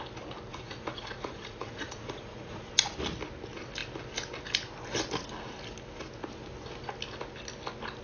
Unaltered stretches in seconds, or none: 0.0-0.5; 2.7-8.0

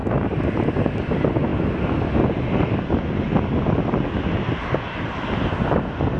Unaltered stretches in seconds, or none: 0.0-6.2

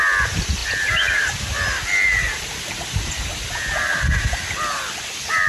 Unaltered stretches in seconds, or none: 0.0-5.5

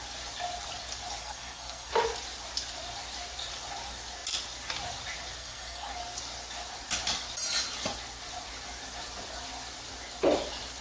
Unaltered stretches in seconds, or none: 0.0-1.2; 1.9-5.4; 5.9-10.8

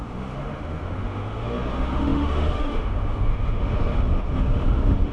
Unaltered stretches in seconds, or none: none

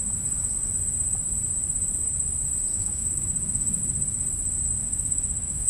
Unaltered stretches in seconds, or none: 0.0-2.7; 3.8-4.8

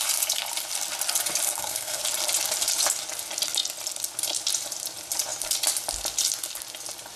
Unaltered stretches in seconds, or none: 0.0-1.5; 2.0-7.2

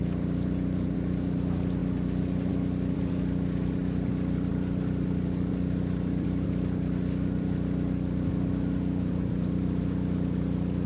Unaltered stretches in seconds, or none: 0.0-10.9